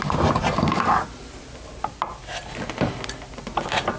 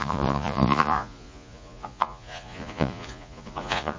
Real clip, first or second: first